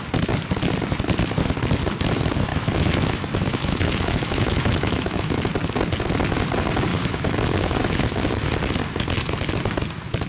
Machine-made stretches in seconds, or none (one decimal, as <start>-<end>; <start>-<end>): 2.5-5.5; 6.9-8.5